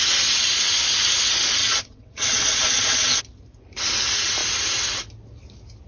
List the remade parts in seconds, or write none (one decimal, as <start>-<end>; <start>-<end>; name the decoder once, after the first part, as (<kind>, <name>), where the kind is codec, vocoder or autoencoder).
1.6-3.2 (vocoder, WaveNeXt)